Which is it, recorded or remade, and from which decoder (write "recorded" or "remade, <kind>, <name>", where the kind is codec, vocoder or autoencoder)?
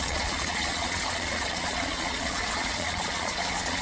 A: remade, vocoder, Vocos